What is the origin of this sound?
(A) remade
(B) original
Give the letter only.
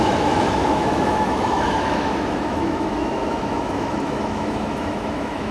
A